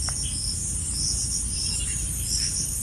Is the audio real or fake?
real